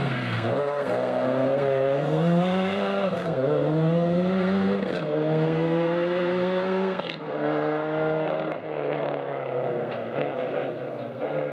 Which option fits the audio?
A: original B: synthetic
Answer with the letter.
B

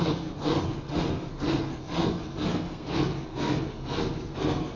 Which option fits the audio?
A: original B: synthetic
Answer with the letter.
B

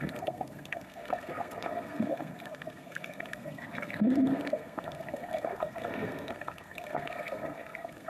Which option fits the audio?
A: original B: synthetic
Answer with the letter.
B